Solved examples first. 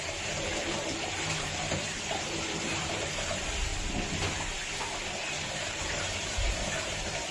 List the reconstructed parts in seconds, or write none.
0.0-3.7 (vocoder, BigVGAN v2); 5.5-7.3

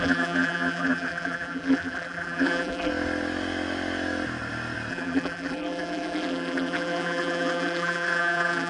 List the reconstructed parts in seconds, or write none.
0.0-2.9 (vocoder, BigVGAN v2); 4.9-8.7

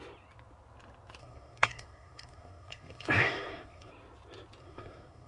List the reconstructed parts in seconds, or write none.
1.2-3.9 (codec, SNAC); 4.6-5.3

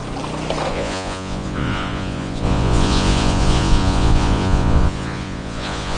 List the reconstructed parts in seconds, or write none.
0.7-6.0 (vocoder, Vocos)

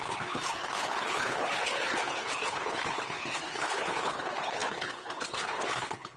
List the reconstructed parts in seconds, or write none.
0.0-6.2 (codec, HILCodec)

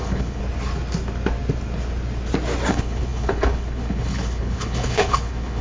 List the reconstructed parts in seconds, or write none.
0.0-0.4 (codec, HILCodec); 2.7-5.6

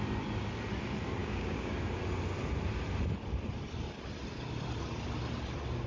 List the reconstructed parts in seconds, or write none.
1.2-1.8 (codec, DAC)

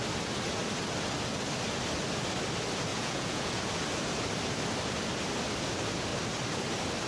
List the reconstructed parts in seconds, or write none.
2.9-3.6 (vocoder, Vocos)